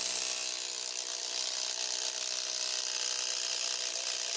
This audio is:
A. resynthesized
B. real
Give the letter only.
B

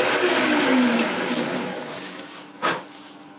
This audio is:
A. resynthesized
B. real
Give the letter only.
A